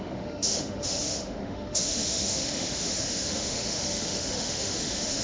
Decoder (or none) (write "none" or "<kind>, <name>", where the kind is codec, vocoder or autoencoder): autoencoder, DAC-VAE